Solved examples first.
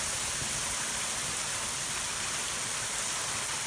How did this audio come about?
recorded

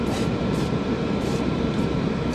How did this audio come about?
remade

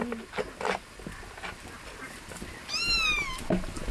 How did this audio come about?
recorded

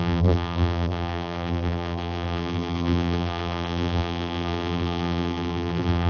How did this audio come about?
remade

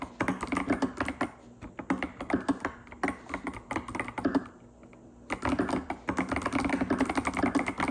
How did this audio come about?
recorded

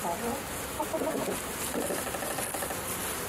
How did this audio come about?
recorded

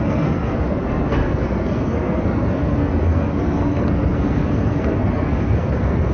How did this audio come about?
remade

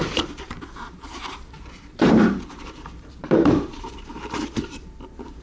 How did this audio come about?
remade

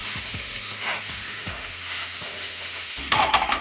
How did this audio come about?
remade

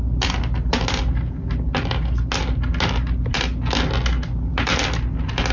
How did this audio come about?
recorded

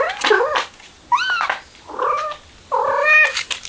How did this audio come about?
recorded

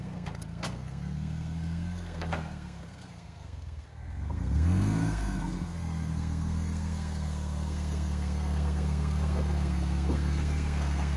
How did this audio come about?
remade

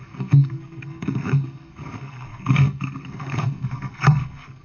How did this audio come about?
remade